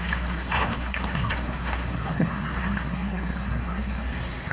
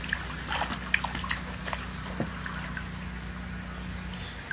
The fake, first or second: first